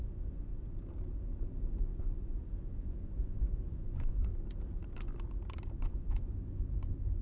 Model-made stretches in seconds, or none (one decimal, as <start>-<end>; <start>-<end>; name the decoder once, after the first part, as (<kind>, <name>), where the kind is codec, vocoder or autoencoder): 0.0-0.5 (vocoder, Vocos); 2.0-4.3; 5.8-7.2